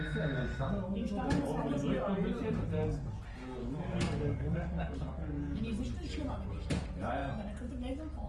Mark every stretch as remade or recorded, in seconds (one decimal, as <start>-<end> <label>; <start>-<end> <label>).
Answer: 0.0-0.5 recorded; 0.5-1.4 remade; 1.4-3.6 recorded; 3.6-5.6 remade; 5.6-8.3 recorded

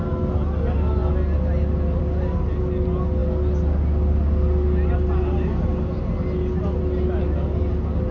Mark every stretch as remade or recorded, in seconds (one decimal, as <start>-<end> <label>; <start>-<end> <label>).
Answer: 0.0-8.1 recorded

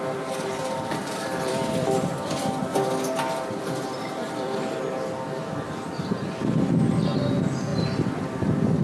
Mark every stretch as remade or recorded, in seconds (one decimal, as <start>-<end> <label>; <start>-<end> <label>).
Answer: 0.0-1.0 recorded; 1.0-2.6 remade; 2.6-4.2 recorded; 4.2-4.8 remade; 4.8-7.7 recorded; 7.7-8.8 remade

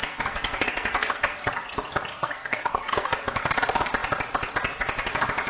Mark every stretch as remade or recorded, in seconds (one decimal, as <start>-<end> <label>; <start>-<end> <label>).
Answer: 0.0-1.4 remade; 1.4-2.1 recorded; 2.1-3.5 remade; 3.5-5.5 recorded

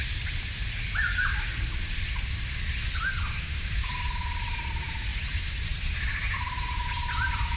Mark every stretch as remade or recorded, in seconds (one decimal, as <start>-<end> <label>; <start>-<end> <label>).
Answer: 0.0-3.0 recorded; 3.0-7.6 remade

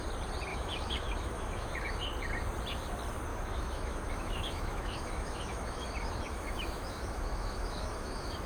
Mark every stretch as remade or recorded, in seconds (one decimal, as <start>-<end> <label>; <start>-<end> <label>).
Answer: 0.0-0.5 recorded; 0.5-2.0 remade; 2.0-3.3 recorded; 3.3-8.5 remade

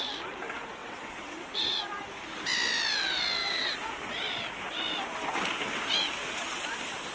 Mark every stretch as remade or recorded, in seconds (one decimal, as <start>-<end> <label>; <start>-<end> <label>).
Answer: 0.0-0.8 recorded; 0.8-1.8 remade; 1.8-3.4 recorded; 3.4-3.9 remade; 3.9-7.1 recorded